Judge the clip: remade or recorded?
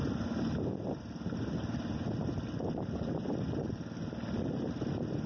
recorded